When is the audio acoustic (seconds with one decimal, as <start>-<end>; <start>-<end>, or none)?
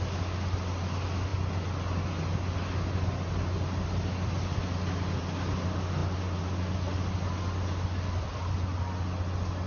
0.0-9.7